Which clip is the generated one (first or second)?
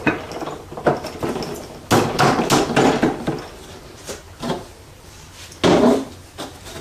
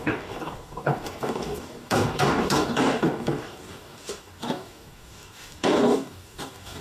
second